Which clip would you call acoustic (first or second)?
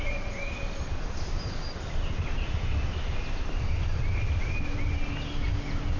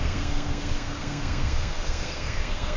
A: first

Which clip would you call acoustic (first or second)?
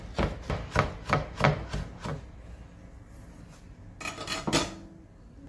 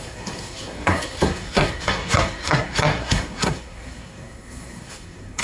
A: first